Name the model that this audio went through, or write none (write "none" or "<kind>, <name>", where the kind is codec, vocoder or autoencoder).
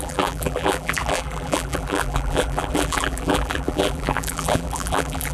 vocoder, BigVGAN v2